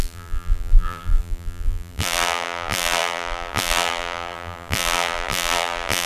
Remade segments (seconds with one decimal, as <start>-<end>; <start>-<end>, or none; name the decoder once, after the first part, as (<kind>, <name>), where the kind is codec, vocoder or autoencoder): 0.0-6.1 (vocoder, BigVGAN v2)